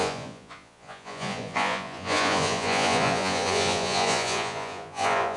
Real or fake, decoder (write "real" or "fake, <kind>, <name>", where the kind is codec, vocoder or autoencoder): fake, vocoder, Vocos